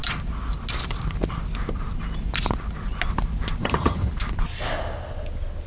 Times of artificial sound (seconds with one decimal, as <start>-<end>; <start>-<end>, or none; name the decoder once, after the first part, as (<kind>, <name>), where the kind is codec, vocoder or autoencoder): 3.6-4.1 (vocoder, HiFi-GAN)